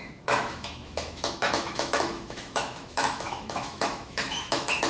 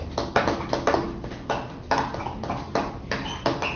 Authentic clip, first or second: second